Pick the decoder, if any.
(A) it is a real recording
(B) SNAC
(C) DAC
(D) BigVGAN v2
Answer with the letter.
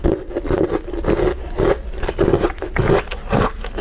A